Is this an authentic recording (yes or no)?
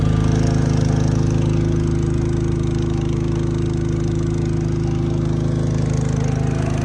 yes